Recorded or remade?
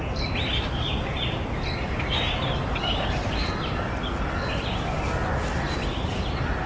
recorded